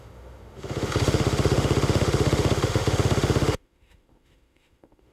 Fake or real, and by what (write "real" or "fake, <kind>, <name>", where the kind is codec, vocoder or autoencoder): fake, autoencoder, DAC-VAE